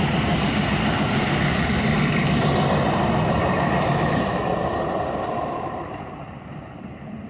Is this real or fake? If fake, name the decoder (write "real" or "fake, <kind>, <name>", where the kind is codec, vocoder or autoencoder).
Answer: real